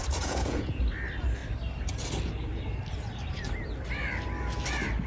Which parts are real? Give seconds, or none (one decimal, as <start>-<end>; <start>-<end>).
0.8-5.1